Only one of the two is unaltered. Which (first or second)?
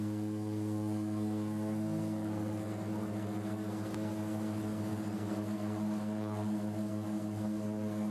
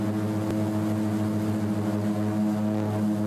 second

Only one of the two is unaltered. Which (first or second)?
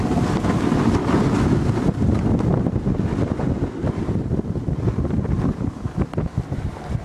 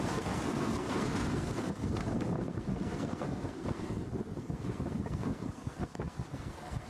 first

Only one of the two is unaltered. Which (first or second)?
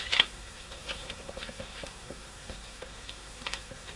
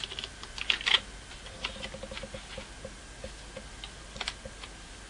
second